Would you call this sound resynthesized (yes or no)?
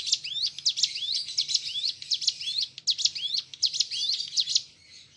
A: no